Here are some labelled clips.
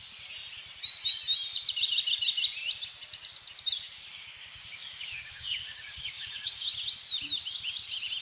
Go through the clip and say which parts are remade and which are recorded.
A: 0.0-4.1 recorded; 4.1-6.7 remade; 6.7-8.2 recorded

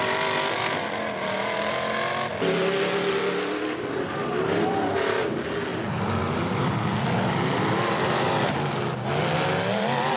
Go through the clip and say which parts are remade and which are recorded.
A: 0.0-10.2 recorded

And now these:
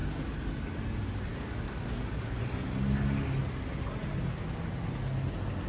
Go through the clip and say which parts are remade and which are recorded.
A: 0.0-1.3 recorded; 1.3-2.4 remade; 2.4-5.7 recorded

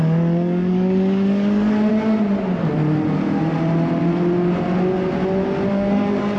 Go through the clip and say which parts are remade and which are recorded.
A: 0.0-1.9 remade; 1.9-5.7 recorded; 5.7-6.4 remade